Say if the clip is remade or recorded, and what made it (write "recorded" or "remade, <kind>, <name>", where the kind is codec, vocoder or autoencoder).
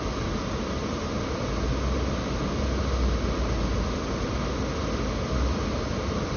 recorded